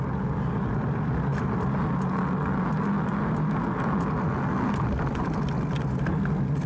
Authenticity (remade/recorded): recorded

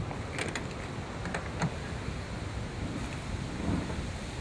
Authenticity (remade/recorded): recorded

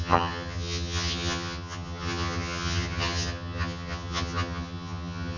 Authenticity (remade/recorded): remade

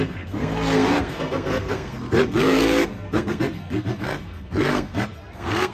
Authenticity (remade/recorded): remade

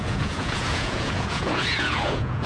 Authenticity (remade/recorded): remade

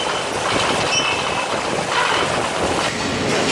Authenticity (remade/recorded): recorded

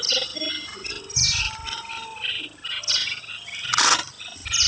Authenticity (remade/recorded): recorded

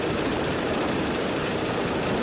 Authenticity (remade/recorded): remade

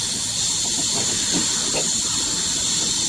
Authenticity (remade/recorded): recorded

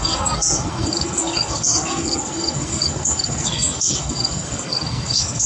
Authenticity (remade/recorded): remade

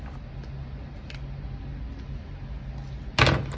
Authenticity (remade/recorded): recorded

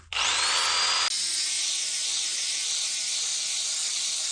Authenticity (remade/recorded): recorded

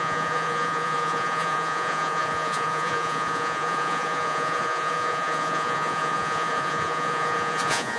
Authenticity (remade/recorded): remade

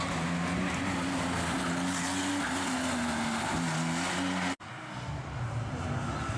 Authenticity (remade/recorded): recorded